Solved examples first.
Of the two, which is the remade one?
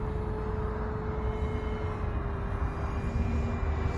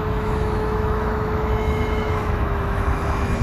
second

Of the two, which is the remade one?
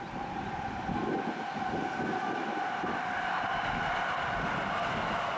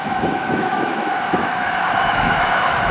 second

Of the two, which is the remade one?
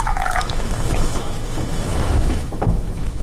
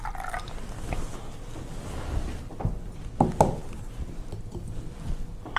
first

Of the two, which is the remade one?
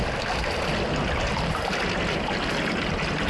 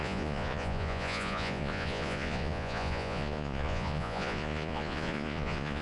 second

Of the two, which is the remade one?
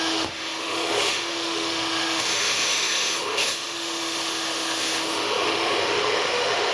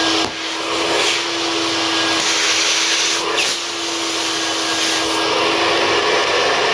first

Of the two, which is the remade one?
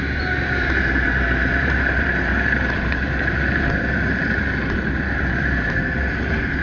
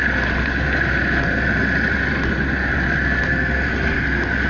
first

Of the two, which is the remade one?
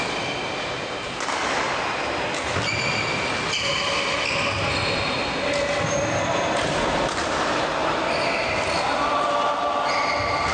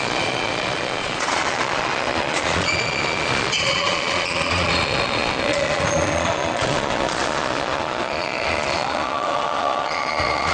second